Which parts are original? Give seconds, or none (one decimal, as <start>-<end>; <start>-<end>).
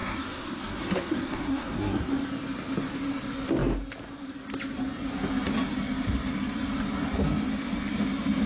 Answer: 2.1-8.5